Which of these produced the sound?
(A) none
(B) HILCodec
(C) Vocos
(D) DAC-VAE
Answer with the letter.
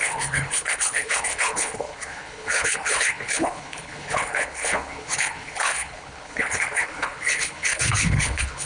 B